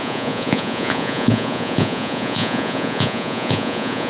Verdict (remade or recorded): remade